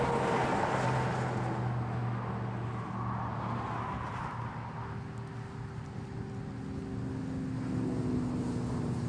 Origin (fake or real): real